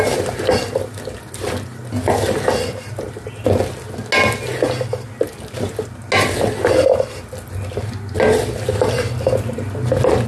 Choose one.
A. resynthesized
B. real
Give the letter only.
B